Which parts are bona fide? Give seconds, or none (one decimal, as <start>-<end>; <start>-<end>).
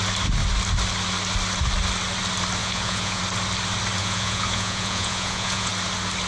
0.0-2.6; 3.2-4.0; 5.7-6.3